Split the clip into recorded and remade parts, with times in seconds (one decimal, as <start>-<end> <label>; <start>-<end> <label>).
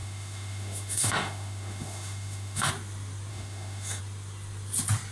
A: 0.0-2.7 remade; 2.7-3.3 recorded; 3.3-4.0 remade; 4.0-5.1 recorded